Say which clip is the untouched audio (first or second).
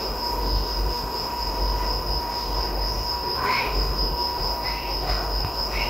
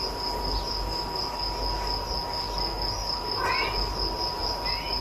second